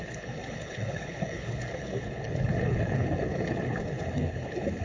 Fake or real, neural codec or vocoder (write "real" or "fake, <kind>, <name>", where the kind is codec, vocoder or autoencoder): fake, codec, HILCodec